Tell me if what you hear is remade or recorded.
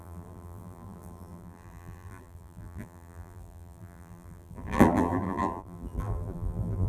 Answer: remade